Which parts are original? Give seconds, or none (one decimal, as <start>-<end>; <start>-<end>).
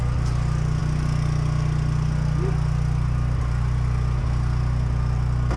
0.0-5.6